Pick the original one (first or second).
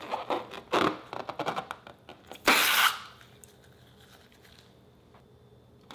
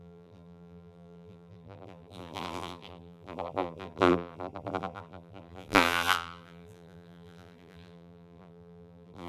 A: first